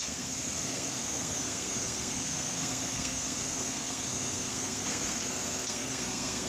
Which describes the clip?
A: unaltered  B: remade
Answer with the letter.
B